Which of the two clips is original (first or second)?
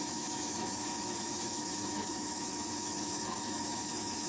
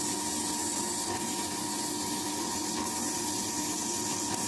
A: second